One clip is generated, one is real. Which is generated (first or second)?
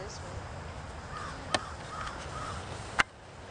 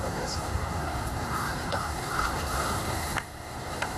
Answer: second